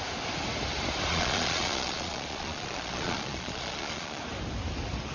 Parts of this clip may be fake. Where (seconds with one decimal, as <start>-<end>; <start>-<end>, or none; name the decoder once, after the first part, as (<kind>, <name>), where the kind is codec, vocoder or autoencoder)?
1.1-4.2 (vocoder, Vocos)